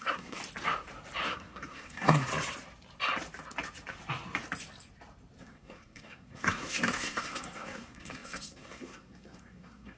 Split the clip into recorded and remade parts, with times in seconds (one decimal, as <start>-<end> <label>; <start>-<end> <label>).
0.0-0.4 remade; 0.4-1.2 recorded; 1.2-2.3 remade; 2.3-5.4 recorded; 5.4-10.0 remade